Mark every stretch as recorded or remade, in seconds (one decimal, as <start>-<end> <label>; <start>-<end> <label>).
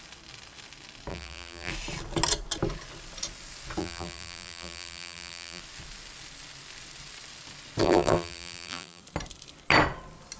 0.0-1.1 recorded; 1.1-1.7 remade; 1.7-3.8 recorded; 3.8-5.6 remade; 5.6-7.8 recorded; 7.8-9.0 remade; 9.0-10.4 recorded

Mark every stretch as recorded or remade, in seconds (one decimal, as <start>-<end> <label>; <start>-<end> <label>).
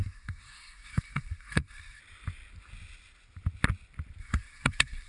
0.0-2.0 remade; 2.0-4.2 recorded; 4.2-5.1 remade